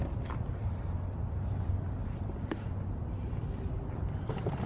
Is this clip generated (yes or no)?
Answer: no